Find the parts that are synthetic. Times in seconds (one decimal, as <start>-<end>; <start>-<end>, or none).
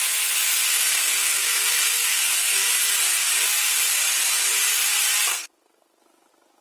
0.7-2.7; 5.3-6.0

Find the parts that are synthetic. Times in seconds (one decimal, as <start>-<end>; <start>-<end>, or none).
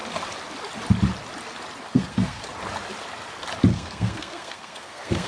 1.9-2.4; 3.7-5.3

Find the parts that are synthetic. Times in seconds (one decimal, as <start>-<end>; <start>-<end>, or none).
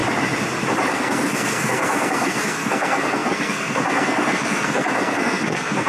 0.9-5.9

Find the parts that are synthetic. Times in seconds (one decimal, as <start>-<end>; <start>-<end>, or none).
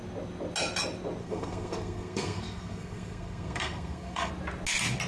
1.2-4.3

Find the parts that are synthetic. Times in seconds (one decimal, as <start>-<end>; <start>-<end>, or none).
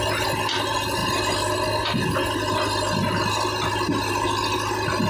none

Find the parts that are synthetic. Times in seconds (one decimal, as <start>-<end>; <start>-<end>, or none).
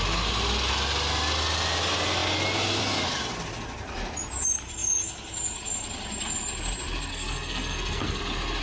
7.1-8.2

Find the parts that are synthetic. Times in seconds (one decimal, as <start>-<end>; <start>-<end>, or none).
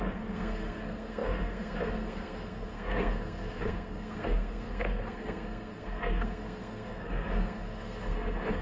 0.0-8.6